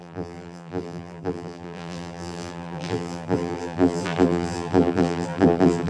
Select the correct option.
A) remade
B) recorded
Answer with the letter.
A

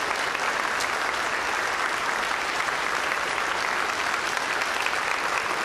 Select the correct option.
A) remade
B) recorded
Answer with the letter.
B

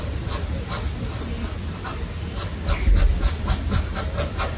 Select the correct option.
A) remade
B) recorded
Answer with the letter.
B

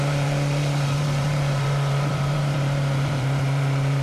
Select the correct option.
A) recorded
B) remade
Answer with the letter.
B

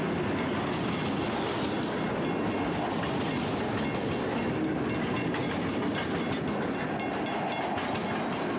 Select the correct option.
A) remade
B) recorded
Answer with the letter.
B